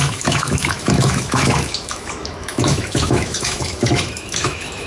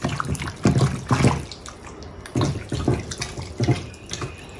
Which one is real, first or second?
second